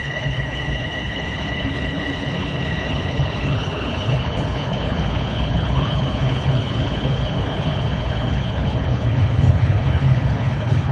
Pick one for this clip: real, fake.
fake